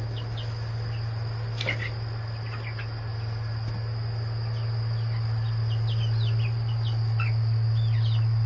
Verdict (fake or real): real